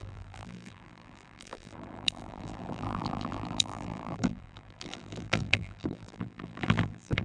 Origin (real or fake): fake